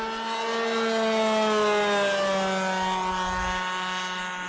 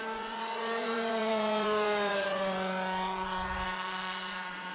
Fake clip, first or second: second